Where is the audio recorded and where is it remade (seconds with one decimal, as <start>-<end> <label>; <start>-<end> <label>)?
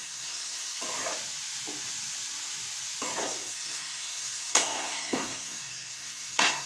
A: 0.0-0.8 remade; 0.8-3.2 recorded; 3.2-6.7 remade